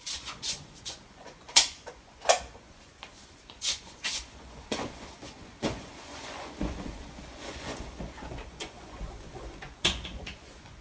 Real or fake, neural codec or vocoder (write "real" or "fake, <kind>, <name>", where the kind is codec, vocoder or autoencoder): fake, vocoder, Vocos